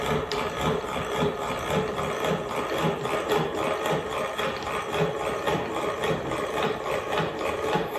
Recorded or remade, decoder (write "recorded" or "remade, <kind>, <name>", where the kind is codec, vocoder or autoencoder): recorded